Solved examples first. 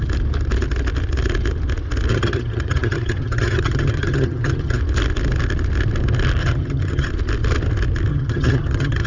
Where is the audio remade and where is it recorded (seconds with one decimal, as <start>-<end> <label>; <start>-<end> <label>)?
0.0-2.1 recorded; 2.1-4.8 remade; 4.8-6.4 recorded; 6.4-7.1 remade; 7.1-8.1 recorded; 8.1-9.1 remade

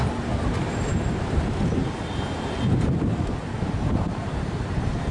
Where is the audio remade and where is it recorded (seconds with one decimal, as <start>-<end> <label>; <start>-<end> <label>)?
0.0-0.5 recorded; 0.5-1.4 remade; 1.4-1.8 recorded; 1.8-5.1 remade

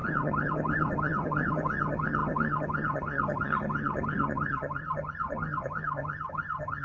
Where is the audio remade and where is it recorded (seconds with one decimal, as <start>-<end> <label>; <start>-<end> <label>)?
0.0-6.8 remade